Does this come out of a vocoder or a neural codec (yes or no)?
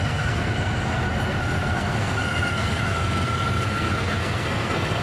yes